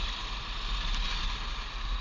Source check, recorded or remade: recorded